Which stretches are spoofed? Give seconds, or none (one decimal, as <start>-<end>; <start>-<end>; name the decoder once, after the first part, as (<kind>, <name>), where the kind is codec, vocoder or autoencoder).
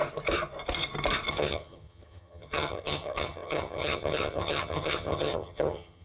1.3-6.0 (vocoder, HiFi-GAN)